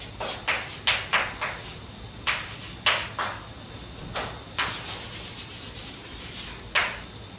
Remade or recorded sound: recorded